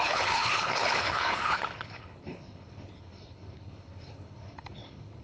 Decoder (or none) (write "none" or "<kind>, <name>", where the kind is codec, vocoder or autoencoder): codec, HILCodec